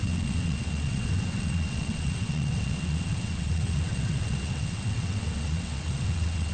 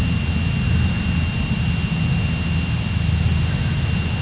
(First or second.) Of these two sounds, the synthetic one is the first